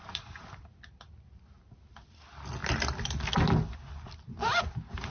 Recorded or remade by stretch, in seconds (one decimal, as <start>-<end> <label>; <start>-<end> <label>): 0.0-5.1 recorded